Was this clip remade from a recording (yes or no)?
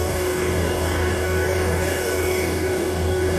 yes